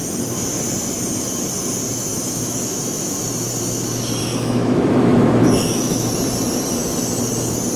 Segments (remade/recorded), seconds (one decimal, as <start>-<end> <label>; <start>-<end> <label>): 0.0-2.1 recorded; 2.1-3.2 remade; 3.2-4.3 recorded; 4.3-6.1 remade; 6.1-7.8 recorded